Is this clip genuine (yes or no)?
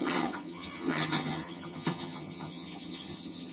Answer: no